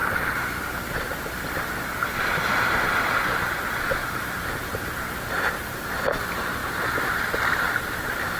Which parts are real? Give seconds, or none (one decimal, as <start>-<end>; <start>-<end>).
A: 0.0-4.0; 5.3-6.6; 7.4-8.4